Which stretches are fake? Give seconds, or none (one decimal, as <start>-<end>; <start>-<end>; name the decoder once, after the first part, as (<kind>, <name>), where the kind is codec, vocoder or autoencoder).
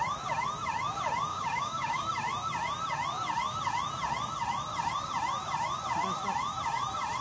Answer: 1.3-2.0 (codec, DAC)